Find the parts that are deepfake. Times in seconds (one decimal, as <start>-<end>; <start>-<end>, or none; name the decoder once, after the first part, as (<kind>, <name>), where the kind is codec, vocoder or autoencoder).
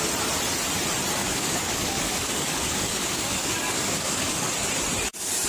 1.2-4.5 (codec, DAC)